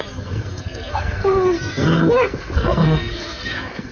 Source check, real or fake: fake